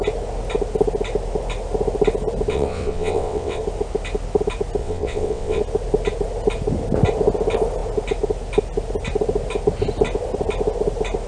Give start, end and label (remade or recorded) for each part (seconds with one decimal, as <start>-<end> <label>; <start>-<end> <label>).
0.0-2.5 recorded; 2.5-3.6 remade; 3.6-4.8 recorded; 4.8-5.6 remade; 5.6-11.3 recorded